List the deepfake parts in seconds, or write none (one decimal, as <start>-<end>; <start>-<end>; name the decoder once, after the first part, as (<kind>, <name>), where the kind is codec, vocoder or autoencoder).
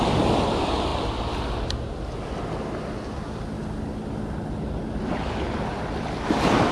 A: none